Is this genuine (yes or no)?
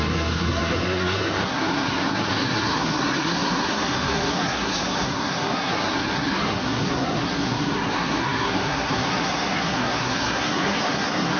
no